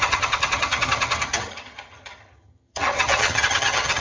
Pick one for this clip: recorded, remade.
remade